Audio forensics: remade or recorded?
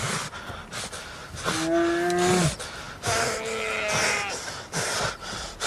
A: recorded